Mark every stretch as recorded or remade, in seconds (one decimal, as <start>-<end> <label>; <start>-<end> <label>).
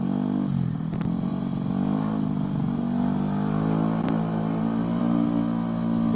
0.0-6.2 recorded